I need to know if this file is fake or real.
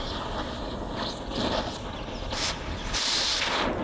real